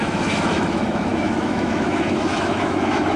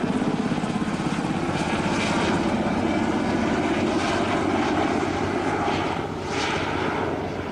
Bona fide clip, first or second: second